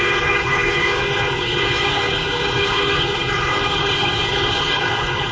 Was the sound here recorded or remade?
remade